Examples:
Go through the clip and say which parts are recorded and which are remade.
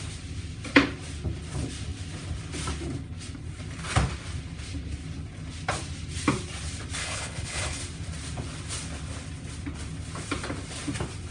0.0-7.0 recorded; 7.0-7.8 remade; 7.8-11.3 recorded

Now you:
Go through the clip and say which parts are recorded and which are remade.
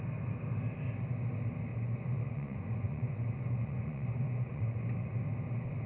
0.0-1.7 recorded; 1.7-5.2 remade; 5.2-5.9 recorded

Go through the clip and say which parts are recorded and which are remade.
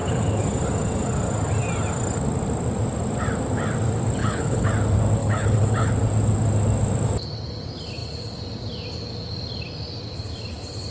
0.0-4.2 recorded; 4.2-4.7 remade; 4.7-5.2 recorded; 5.2-5.9 remade; 5.9-10.9 recorded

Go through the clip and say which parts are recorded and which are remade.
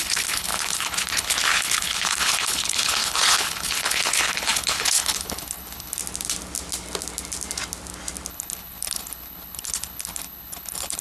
0.0-6.0 remade; 6.0-8.3 recorded; 8.3-11.0 remade